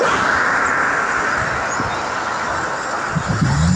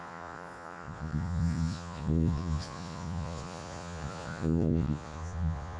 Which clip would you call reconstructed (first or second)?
second